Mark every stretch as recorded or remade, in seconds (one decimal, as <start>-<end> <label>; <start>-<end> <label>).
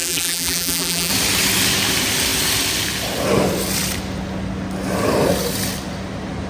0.0-1.1 remade; 1.1-6.5 recorded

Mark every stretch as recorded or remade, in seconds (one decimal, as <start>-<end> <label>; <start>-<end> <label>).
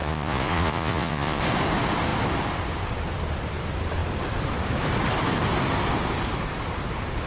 0.0-1.4 remade; 1.4-7.3 recorded